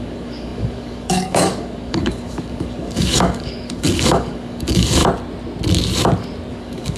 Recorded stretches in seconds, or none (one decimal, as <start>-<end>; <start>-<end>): 5.0-6.5